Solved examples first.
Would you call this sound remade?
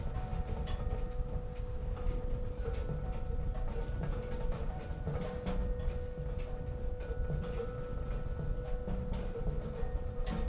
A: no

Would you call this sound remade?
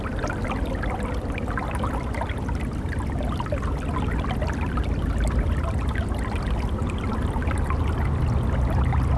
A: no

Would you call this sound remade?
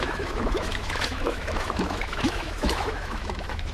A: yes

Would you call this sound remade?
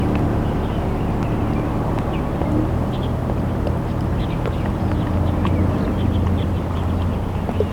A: no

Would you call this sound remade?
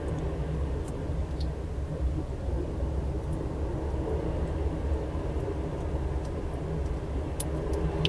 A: no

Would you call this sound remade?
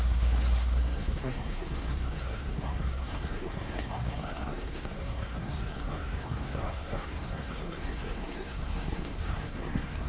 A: yes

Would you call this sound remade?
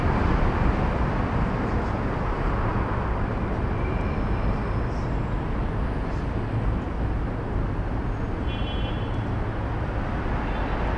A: no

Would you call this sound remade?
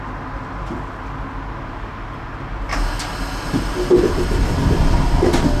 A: no